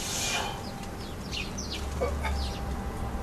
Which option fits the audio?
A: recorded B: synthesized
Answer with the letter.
A